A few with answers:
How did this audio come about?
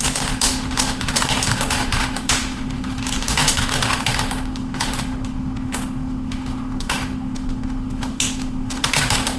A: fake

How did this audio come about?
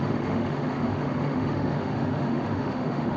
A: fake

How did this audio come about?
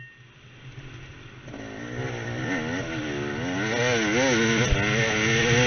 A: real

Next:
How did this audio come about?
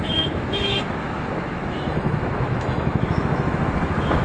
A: fake